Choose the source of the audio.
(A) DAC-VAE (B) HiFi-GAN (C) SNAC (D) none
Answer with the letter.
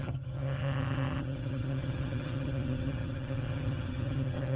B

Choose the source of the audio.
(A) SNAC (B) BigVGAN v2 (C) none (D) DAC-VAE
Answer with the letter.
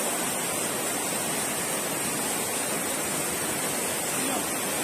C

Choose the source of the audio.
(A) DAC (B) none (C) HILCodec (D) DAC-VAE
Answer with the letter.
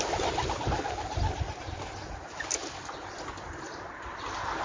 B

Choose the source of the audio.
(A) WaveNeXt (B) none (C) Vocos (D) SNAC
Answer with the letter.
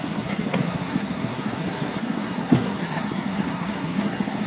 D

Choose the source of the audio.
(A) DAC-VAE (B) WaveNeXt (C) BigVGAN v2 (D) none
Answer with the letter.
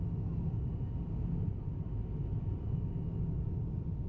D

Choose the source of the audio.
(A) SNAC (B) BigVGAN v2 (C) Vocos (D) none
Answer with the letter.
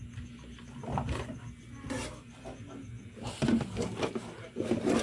D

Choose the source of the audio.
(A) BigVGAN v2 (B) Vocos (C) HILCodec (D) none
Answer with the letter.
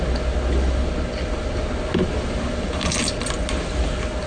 D